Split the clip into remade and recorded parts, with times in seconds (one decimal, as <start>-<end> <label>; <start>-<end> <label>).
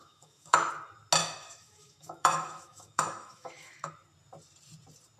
0.0-0.7 remade; 0.7-1.2 recorded; 1.2-3.9 remade; 3.9-5.2 recorded